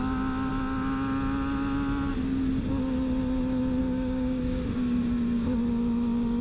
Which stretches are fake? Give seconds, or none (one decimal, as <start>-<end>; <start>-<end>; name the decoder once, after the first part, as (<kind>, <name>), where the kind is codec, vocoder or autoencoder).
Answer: 3.8-5.0 (codec, DAC)

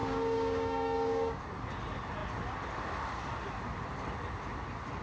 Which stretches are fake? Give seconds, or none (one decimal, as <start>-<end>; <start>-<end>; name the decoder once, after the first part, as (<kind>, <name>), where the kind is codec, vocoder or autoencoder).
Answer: 0.0-1.4 (codec, DAC)

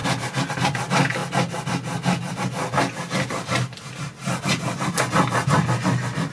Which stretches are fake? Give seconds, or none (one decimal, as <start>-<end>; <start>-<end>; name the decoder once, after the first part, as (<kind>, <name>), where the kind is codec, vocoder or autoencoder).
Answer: none

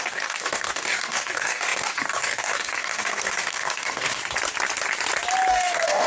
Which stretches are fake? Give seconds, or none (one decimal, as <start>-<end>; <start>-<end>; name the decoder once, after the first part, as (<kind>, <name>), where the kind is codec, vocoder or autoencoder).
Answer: 0.0-4.2 (codec, DAC); 5.5-6.1

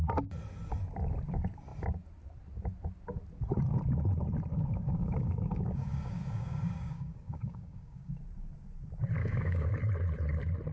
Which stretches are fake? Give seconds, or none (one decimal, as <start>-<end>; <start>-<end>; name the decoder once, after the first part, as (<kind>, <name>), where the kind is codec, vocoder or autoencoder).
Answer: 4.5-8.1 (codec, DAC); 9.2-9.7

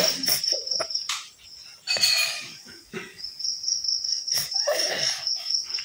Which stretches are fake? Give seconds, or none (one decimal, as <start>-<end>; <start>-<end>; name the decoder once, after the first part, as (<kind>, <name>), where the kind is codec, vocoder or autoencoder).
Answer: 2.2-5.8 (codec, DAC)